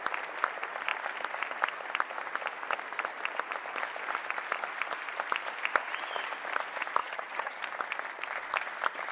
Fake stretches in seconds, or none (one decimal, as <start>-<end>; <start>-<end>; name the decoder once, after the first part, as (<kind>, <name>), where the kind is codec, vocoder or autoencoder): 7.0-7.6 (vocoder, HiFi-GAN)